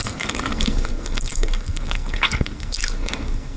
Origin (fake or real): fake